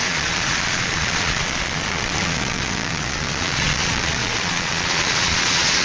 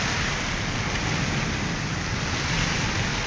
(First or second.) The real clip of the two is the second